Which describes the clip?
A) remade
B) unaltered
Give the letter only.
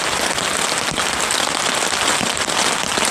B